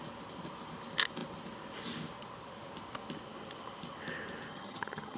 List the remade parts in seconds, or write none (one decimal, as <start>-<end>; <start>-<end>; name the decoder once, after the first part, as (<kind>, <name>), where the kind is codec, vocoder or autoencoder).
4.5-5.2 (vocoder, HiFi-GAN)